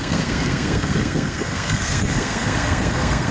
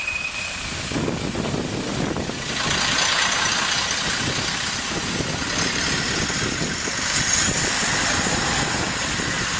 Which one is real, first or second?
second